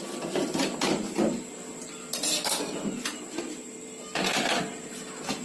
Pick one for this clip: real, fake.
real